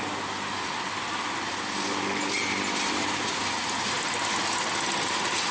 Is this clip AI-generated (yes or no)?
no